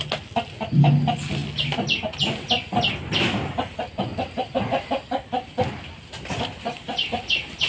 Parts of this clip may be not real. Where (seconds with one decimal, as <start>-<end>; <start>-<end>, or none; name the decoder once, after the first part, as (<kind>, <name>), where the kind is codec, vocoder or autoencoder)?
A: none